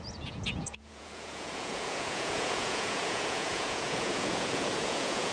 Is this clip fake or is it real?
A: fake